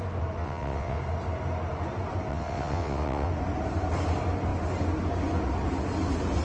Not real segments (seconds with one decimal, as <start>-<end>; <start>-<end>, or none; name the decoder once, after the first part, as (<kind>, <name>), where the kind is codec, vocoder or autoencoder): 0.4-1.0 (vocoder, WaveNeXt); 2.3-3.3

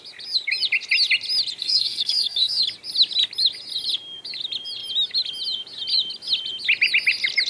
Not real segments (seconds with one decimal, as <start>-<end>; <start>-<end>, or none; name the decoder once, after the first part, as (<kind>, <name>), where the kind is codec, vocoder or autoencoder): 1.6-2.6 (codec, SNAC)

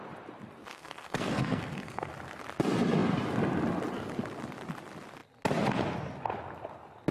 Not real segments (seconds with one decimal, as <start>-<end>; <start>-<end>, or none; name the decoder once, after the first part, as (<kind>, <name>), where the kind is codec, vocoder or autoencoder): 0.7-2.1 (codec, SNAC)

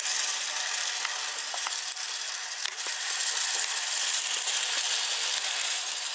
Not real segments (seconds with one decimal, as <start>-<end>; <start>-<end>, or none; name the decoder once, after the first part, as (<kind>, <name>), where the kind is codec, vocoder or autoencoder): none

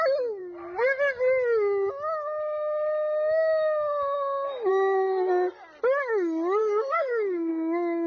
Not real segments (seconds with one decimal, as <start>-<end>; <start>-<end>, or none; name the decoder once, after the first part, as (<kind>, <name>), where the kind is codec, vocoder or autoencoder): 6.6-7.5 (codec, SNAC)